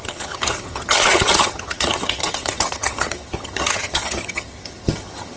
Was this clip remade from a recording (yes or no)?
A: yes